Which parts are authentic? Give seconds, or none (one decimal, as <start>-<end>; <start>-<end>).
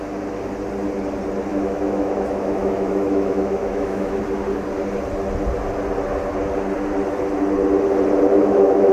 0.0-1.5; 4.2-8.3